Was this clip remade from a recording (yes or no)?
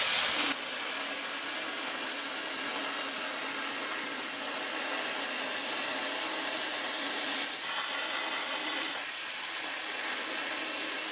no